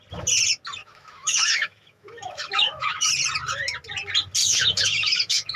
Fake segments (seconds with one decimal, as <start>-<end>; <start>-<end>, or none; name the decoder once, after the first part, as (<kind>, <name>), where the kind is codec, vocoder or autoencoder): 0.8-3.1 (autoencoder, DAC-VAE); 4.4-5.6